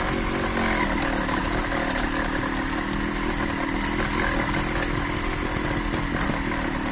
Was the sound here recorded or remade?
recorded